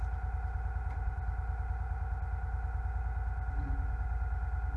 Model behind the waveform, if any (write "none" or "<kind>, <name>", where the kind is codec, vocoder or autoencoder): none